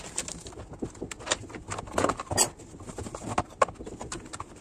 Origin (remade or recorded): recorded